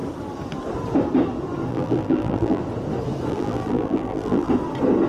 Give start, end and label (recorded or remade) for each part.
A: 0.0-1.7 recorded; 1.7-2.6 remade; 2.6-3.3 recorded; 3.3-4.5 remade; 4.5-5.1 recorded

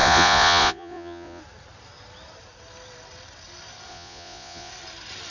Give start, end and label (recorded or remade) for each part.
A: 0.0-1.4 remade; 1.4-3.9 recorded; 3.9-4.7 remade; 4.7-5.3 recorded

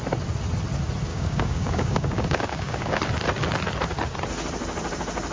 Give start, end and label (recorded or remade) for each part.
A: 0.0-1.1 recorded; 1.1-3.0 remade; 3.0-5.3 recorded

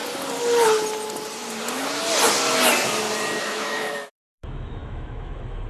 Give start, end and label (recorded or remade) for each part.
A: 0.0-3.4 recorded; 3.4-5.7 remade